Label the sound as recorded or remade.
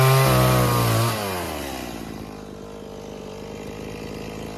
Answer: recorded